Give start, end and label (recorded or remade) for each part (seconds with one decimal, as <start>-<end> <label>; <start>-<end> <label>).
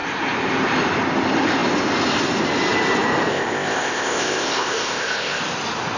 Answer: 0.0-3.3 recorded; 3.3-5.4 remade; 5.4-6.0 recorded